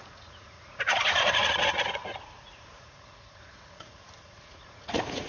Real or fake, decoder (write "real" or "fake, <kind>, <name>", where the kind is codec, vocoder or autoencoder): fake, vocoder, Vocos